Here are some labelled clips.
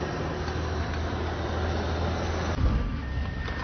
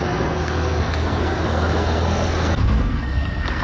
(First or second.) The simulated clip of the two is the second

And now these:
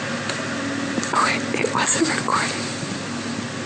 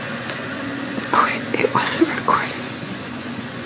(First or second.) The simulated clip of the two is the second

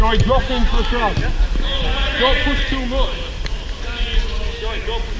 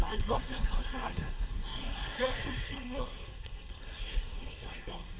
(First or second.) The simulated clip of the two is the second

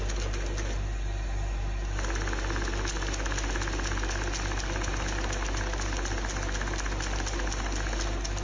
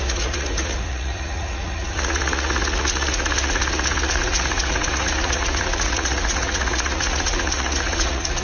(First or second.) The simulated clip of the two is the second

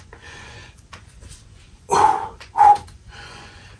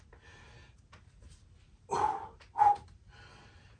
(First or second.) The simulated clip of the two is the first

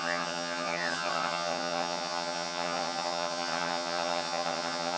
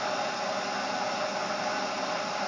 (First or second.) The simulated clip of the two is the first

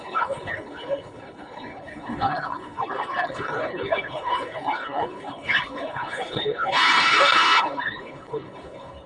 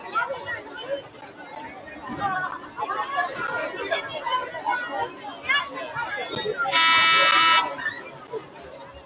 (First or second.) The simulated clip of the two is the first